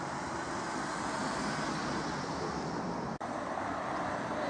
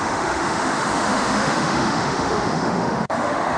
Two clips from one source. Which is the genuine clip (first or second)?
first